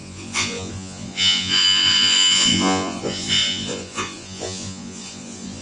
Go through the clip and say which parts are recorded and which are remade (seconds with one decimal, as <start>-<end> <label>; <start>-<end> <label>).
0.0-5.6 remade